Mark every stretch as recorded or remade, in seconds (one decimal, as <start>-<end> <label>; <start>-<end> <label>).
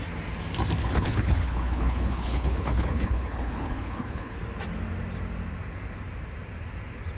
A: 0.0-0.8 recorded; 0.8-4.4 remade; 4.4-7.2 recorded